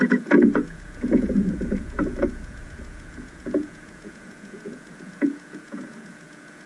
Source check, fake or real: fake